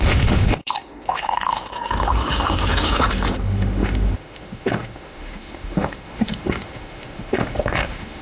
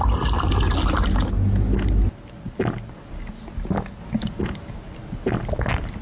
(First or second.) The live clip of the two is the second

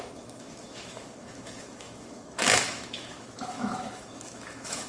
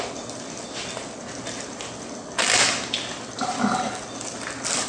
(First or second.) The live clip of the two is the second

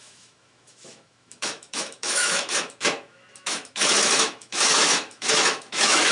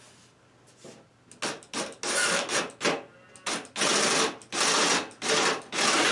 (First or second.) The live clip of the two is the second